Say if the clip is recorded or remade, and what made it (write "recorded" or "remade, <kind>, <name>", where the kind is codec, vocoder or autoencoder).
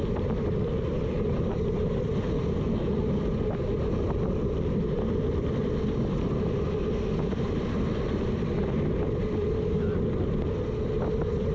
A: recorded